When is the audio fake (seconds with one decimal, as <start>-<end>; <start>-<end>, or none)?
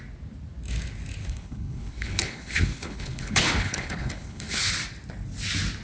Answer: 1.2-4.7